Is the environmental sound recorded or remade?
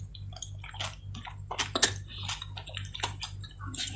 recorded